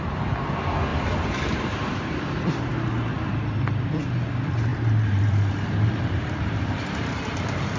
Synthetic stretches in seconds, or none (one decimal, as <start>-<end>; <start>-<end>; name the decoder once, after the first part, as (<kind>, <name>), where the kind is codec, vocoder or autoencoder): 0.9-2.2 (vocoder, BigVGAN v2); 4.7-7.2